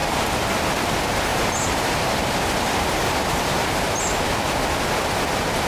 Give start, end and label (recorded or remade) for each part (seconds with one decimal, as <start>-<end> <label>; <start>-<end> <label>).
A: 0.0-1.3 recorded; 1.3-3.7 remade; 3.7-5.7 recorded